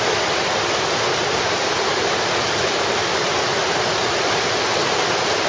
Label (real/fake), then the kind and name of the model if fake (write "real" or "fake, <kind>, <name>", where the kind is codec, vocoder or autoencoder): real